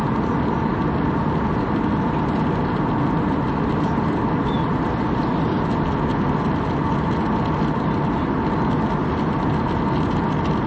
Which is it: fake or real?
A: real